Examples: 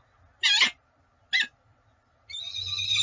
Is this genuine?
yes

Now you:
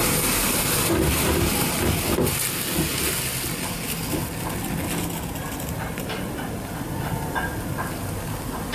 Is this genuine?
yes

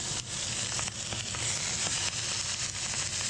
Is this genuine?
yes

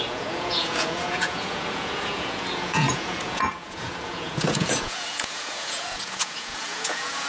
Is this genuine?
no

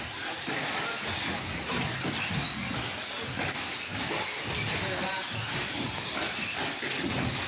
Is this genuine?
yes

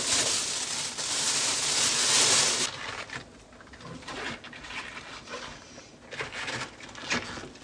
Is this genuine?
yes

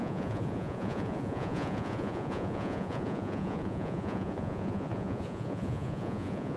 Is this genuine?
no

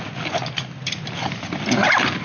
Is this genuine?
yes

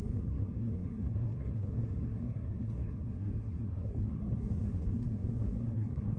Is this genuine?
no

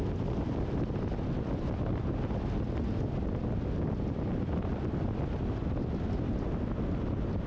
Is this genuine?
yes